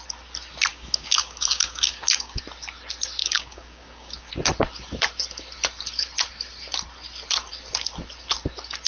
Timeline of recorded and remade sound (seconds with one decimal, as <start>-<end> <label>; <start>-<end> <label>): 0.0-0.7 recorded; 0.7-2.4 remade; 2.4-3.2 recorded; 3.2-4.3 remade; 4.3-8.9 recorded